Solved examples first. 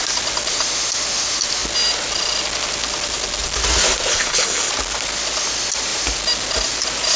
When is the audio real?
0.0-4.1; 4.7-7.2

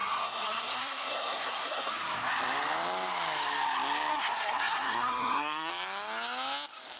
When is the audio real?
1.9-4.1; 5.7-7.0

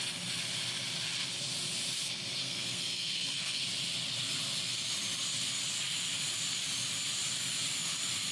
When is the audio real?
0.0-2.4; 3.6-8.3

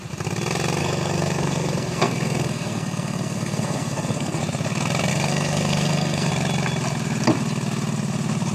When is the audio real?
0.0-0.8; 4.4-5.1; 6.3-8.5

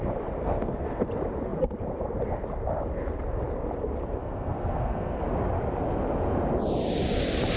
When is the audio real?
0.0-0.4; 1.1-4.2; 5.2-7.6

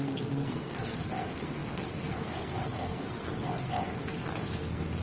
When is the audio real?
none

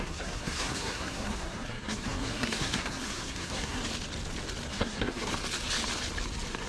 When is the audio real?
3.8-4.7; 5.3-6.7